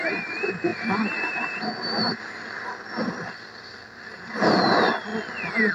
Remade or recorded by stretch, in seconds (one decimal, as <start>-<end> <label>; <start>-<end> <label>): 0.0-5.7 remade